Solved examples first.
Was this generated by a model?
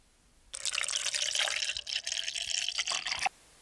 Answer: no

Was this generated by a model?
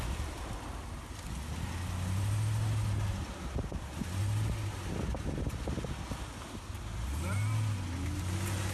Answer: no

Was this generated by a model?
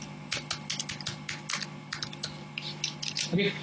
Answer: no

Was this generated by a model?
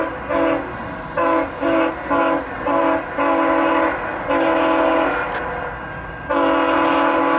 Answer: no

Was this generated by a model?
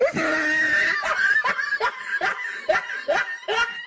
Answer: no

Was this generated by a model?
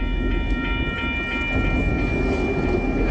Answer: no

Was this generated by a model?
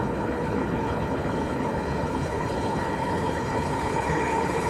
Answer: yes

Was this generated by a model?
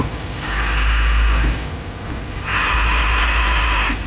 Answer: no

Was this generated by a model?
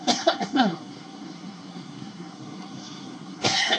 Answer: yes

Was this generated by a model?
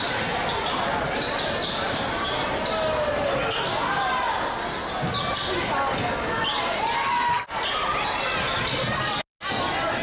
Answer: no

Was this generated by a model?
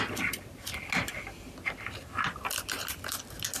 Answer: no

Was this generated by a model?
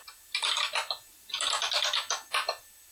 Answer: no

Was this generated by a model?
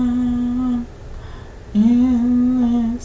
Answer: no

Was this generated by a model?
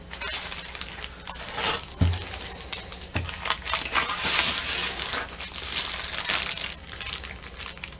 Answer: no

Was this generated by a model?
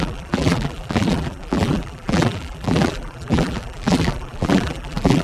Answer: yes